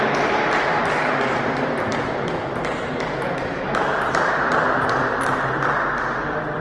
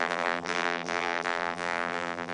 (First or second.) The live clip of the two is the first